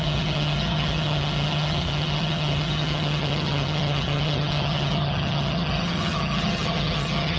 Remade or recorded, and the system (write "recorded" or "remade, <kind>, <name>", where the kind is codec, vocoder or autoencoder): remade, vocoder, HiFi-GAN